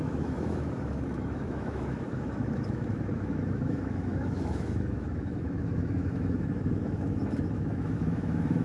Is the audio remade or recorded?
remade